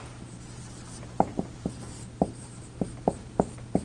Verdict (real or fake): fake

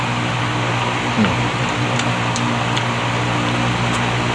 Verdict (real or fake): real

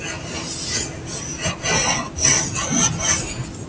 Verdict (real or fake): real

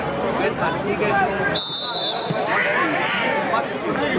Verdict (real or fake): real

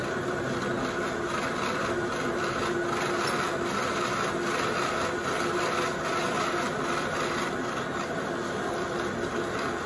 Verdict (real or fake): real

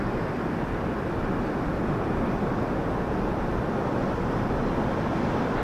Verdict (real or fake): real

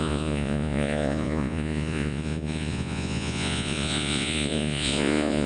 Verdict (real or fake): fake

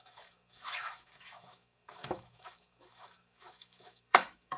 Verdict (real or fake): fake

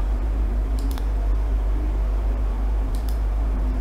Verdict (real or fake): fake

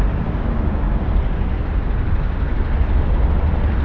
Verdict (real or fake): real